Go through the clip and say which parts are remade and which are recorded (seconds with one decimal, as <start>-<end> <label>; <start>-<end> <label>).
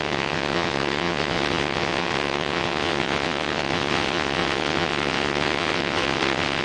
0.0-6.6 remade